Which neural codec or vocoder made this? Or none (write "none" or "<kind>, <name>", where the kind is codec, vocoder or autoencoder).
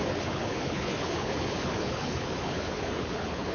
codec, HILCodec